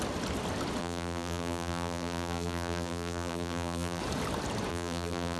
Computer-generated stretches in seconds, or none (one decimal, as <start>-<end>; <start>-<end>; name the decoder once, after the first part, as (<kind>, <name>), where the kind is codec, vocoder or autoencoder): 0.8-4.0 (vocoder, BigVGAN v2); 4.7-5.4